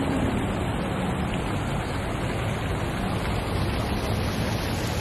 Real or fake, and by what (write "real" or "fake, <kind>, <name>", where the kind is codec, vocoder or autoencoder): real